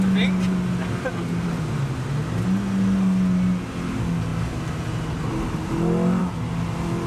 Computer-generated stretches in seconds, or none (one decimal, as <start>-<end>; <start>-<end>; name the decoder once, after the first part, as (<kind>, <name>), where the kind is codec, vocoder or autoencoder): none